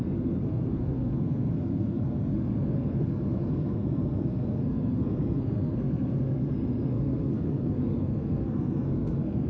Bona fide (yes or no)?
no